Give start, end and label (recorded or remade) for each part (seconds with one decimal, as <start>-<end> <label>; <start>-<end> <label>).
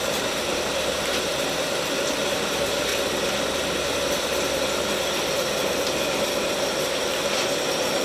0.0-2.9 remade; 2.9-8.0 recorded